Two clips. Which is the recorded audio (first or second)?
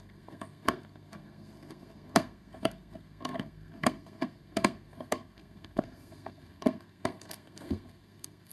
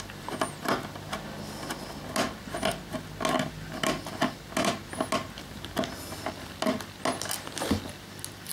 second